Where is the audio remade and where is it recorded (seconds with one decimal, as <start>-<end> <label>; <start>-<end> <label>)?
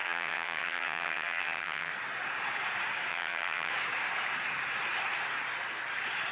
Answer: 0.0-1.9 remade; 1.9-3.1 recorded; 3.1-3.7 remade; 3.7-6.3 recorded